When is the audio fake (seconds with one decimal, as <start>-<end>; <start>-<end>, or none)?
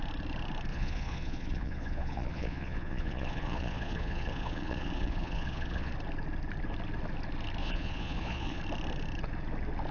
0.7-5.9; 7.6-8.6